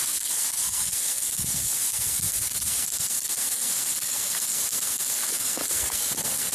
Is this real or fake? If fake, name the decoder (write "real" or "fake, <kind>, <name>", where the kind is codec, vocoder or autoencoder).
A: fake, codec, SNAC